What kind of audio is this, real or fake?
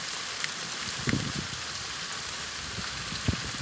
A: real